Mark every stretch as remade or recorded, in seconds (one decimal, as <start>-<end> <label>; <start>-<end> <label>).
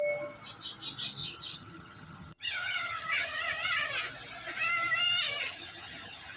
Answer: 0.0-1.2 recorded; 1.2-3.9 remade; 3.9-5.4 recorded; 5.4-6.4 remade